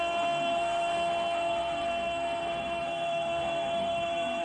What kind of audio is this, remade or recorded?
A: remade